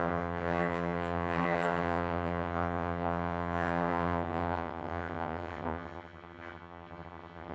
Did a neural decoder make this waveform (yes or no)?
yes